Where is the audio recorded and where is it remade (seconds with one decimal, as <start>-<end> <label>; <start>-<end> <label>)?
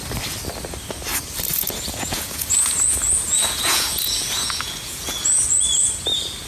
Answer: 0.0-1.5 recorded; 1.5-5.4 remade; 5.4-6.5 recorded